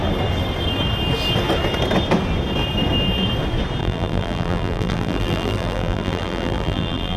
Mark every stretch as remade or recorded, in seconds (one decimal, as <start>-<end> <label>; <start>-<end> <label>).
0.0-3.8 recorded; 3.8-7.2 remade